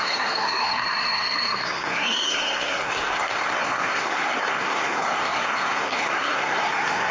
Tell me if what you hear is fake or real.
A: fake